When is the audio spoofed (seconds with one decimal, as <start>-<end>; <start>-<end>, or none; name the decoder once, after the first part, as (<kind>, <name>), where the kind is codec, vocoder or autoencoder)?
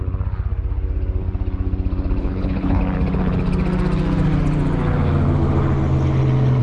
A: 2.2-2.8 (codec, HILCodec)